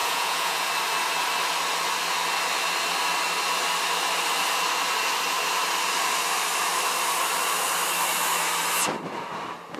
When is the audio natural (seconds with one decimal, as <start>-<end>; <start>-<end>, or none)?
0.7-9.8